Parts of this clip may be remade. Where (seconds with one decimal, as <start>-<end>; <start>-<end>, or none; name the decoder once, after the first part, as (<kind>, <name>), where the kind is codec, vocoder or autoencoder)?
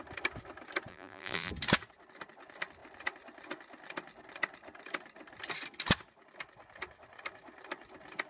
0.9-1.5 (vocoder, BigVGAN v2)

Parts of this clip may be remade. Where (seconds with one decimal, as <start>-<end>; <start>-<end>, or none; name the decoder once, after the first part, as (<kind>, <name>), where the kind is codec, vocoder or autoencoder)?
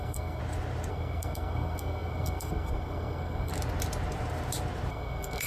0.0-0.4 (codec, SNAC); 0.9-3.5; 4.9-5.5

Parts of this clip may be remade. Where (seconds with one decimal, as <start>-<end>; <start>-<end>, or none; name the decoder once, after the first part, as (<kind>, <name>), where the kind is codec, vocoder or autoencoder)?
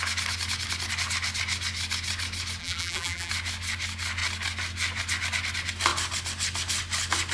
2.6-3.3 (vocoder, BigVGAN v2)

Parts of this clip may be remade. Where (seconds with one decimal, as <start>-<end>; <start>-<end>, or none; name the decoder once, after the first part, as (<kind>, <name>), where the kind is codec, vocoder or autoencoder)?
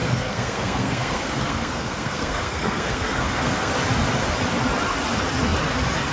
0.0-3.7 (codec, SNAC)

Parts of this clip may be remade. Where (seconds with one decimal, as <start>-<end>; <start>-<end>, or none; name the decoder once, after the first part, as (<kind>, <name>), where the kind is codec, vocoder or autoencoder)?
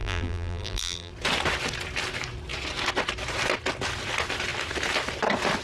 0.0-1.1 (vocoder, BigVGAN v2)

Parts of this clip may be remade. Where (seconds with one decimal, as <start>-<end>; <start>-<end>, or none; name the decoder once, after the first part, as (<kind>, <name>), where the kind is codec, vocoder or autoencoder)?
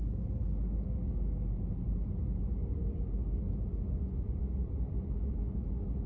none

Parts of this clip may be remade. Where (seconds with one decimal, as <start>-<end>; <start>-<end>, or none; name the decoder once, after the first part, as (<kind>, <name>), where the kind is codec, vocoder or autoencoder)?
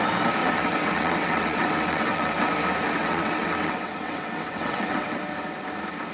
0.4-2.5 (vocoder, WaveNeXt); 3.0-5.2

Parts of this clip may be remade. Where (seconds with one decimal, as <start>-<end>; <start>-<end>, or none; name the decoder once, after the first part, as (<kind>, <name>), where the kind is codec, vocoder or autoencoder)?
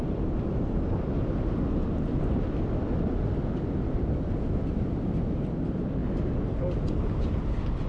none